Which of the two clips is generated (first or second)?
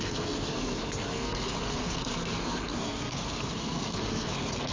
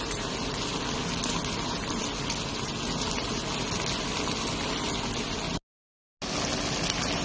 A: first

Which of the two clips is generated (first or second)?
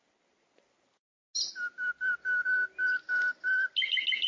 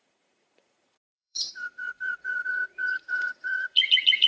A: second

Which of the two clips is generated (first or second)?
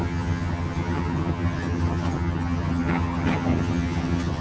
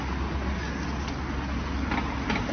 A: first